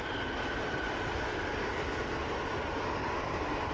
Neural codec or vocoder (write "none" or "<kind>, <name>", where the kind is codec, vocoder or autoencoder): none